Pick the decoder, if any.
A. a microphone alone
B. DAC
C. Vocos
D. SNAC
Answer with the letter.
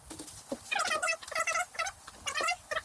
A